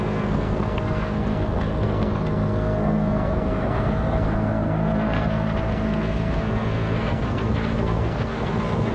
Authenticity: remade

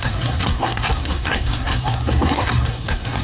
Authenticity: remade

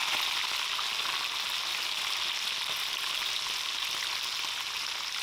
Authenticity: recorded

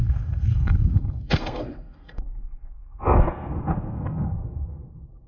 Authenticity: remade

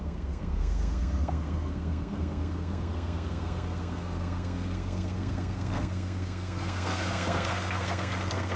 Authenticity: remade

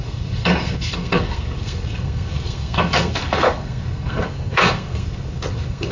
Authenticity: remade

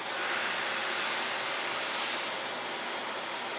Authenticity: recorded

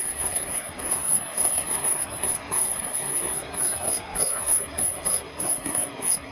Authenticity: remade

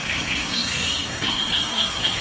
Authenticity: remade